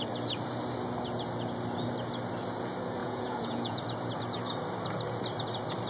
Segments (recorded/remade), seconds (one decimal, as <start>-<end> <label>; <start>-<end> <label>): 0.0-3.0 recorded; 3.0-3.8 remade; 3.8-5.9 recorded